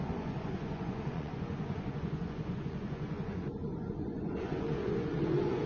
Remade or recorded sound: remade